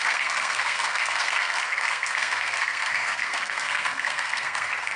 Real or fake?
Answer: fake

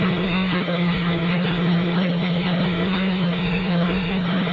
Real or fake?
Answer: fake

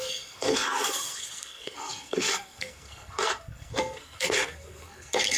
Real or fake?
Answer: fake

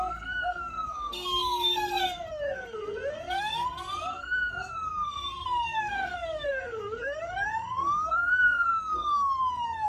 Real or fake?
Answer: fake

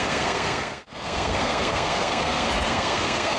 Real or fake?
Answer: fake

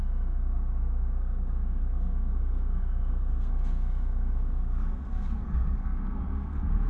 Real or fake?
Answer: fake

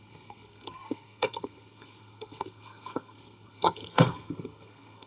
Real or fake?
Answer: fake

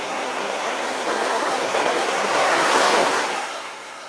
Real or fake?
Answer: fake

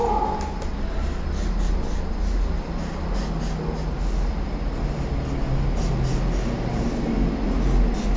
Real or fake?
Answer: real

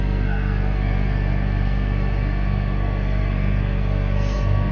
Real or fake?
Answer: fake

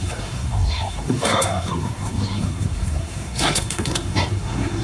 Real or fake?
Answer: fake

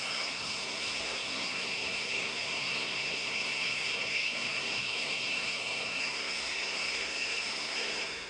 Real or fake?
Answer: fake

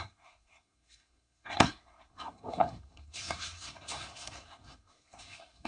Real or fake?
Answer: fake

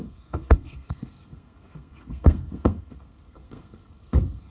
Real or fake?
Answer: fake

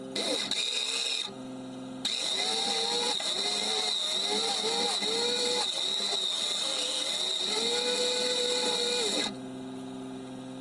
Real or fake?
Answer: real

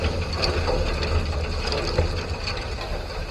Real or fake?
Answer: real